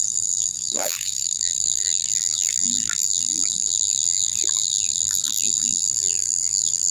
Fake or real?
fake